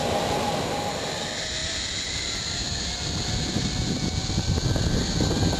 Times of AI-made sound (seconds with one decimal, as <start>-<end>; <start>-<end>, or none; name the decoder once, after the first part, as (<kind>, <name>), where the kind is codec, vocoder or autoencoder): 0.0-1.1 (vocoder, BigVGAN v2); 1.6-3.6